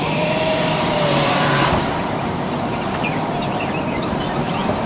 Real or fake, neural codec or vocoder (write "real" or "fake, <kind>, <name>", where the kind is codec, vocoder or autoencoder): fake, vocoder, BigVGAN v2